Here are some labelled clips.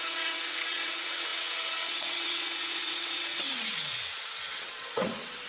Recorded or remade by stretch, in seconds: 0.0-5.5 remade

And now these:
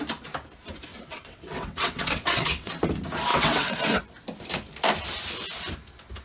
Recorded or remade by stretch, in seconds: 0.0-0.9 recorded; 0.9-2.7 remade; 2.7-3.3 recorded; 3.3-4.0 remade; 4.0-6.2 recorded

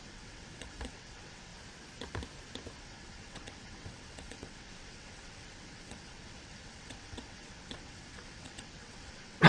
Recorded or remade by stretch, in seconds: 0.0-1.5 remade; 1.5-2.8 recorded; 2.8-9.5 remade

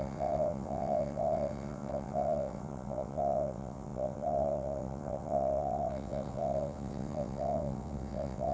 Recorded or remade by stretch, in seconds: 0.0-8.5 remade

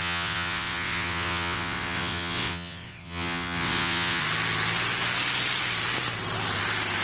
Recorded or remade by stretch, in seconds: 0.0-4.2 remade; 4.2-7.0 recorded